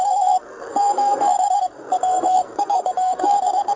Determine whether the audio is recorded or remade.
remade